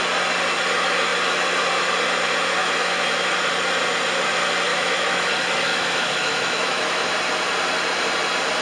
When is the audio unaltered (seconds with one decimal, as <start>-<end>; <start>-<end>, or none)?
0.0-2.6; 3.3-4.7; 5.3-5.7; 7.1-8.6

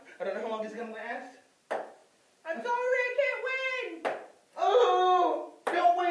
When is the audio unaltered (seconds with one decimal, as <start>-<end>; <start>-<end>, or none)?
0.0-6.1

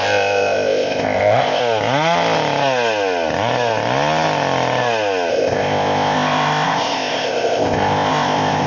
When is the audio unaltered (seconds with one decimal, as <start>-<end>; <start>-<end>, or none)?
1.6-5.3